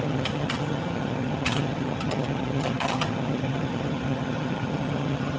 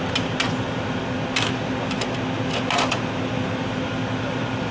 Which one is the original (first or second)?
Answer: second